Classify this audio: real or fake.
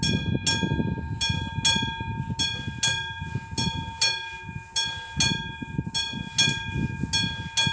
real